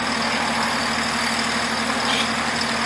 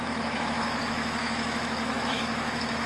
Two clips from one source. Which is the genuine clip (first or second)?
first